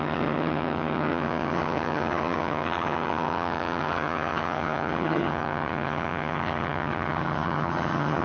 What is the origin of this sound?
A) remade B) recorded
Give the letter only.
A